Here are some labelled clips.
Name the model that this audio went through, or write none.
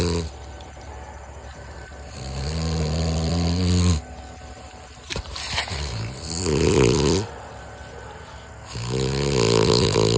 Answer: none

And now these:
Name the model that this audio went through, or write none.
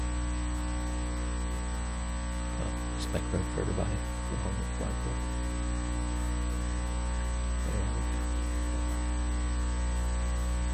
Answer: none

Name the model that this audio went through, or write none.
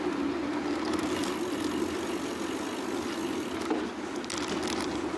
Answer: none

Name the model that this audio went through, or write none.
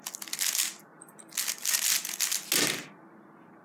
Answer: none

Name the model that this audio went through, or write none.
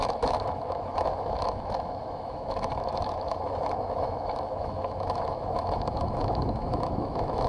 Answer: autoencoder, DAC-VAE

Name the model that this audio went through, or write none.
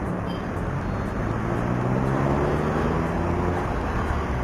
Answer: none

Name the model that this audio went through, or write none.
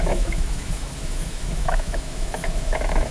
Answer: autoencoder, DAC-VAE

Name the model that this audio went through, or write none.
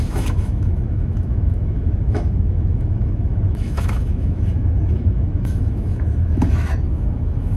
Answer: autoencoder, DAC-VAE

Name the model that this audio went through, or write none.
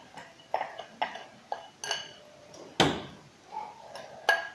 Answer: none